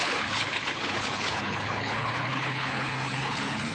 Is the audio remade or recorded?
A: remade